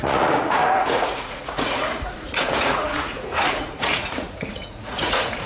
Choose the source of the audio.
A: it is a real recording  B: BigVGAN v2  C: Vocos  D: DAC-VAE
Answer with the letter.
C